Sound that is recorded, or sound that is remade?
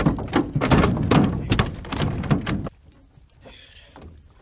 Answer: recorded